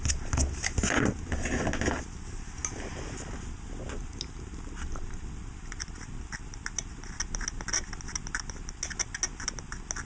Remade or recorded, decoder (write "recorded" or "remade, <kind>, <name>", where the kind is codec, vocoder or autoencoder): recorded